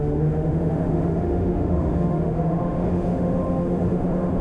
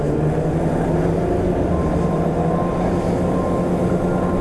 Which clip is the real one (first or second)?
second